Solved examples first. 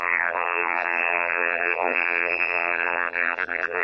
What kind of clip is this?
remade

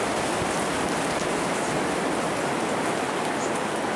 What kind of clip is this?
recorded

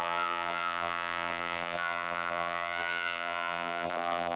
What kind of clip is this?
remade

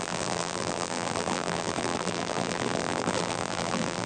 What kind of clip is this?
remade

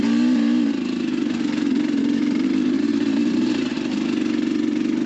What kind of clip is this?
remade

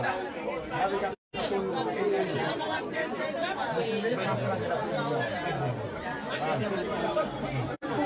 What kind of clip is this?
recorded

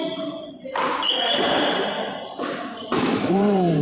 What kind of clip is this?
remade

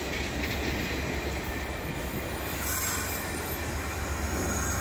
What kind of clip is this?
recorded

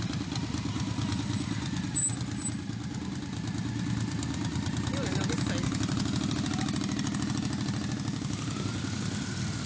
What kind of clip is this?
recorded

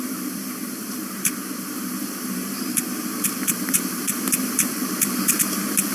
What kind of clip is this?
remade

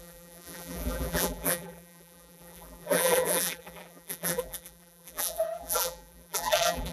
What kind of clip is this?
remade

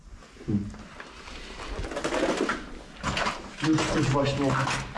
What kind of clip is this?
recorded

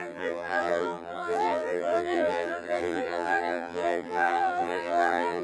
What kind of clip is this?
remade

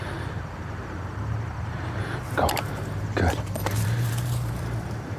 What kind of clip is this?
remade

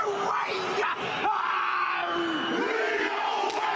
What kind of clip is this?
recorded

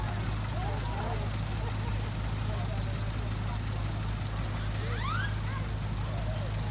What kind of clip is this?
recorded